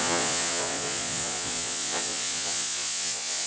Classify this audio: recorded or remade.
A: remade